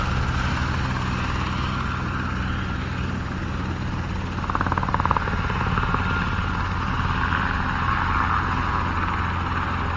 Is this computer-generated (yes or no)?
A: no